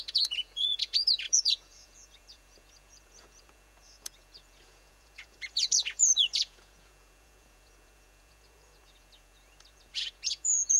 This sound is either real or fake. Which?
fake